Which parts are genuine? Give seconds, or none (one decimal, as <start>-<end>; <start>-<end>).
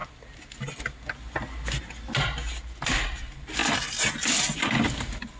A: 0.0-5.4